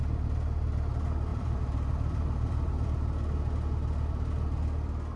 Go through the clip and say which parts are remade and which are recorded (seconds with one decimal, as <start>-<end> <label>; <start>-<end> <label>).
0.0-1.3 recorded; 1.3-2.9 remade; 2.9-5.2 recorded